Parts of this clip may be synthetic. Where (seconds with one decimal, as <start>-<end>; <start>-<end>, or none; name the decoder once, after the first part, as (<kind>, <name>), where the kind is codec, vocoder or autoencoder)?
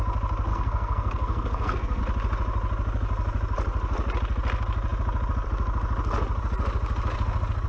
0.5-2.0 (codec, SNAC)